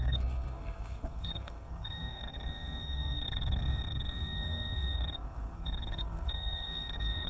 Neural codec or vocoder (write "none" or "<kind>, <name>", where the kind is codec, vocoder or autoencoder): codec, SNAC